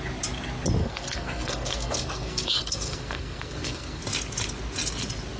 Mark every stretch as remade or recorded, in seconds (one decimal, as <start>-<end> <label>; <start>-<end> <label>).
0.0-0.8 recorded; 0.8-4.0 remade; 4.0-5.4 recorded